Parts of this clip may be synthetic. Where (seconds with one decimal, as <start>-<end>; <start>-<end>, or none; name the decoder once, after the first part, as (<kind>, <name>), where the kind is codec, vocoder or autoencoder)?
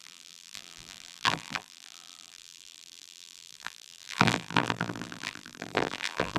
0.0-6.4 (vocoder, BigVGAN v2)